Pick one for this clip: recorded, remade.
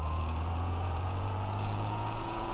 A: remade